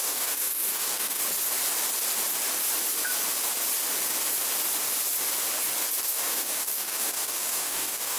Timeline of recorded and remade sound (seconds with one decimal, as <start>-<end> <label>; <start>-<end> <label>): 0.0-1.2 remade; 1.2-6.1 recorded; 6.1-8.2 remade